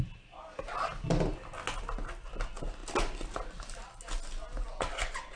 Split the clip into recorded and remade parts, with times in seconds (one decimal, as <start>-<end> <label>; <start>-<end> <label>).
0.0-5.4 recorded